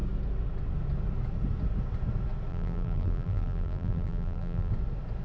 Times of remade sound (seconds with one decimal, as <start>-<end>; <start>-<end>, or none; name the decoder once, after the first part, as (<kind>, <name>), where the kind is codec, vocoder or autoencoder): 2.5-4.7 (vocoder, BigVGAN v2)